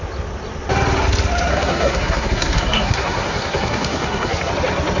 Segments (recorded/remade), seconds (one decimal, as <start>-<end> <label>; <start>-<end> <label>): 0.0-1.5 recorded; 1.5-4.5 remade; 4.5-5.0 recorded

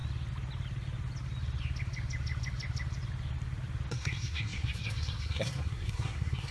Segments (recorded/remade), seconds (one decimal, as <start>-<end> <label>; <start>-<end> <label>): 0.0-3.9 recorded; 3.9-6.5 remade

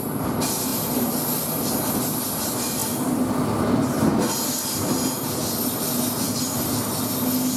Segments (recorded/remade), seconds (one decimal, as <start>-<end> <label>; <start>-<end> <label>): 0.0-7.6 recorded

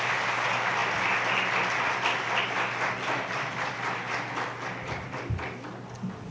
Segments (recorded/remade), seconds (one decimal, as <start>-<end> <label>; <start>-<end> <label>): 0.0-6.3 recorded

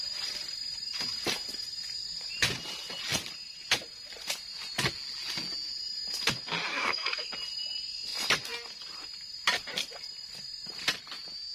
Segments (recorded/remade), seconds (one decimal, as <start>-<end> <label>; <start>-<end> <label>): 0.0-6.7 recorded; 6.7-7.3 remade; 7.3-11.5 recorded